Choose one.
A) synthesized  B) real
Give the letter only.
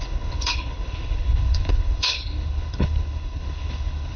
A